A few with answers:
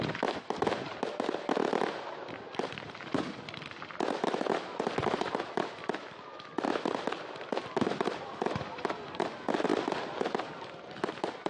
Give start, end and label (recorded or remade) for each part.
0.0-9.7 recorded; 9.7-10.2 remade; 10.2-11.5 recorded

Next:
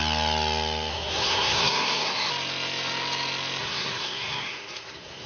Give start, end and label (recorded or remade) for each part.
0.0-0.9 recorded; 0.9-2.3 remade; 2.3-3.6 recorded; 3.6-5.3 remade

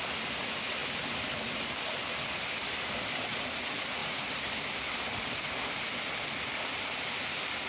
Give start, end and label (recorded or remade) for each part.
0.0-7.7 recorded

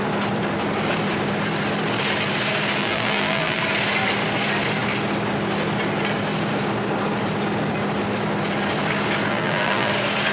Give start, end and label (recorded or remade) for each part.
0.0-2.8 recorded; 2.8-3.6 remade; 3.6-9.3 recorded; 9.3-9.9 remade; 9.9-10.3 recorded